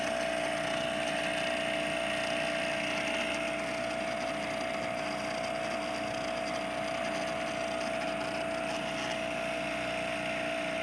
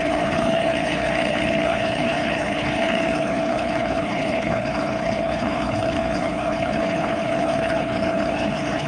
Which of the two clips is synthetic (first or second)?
second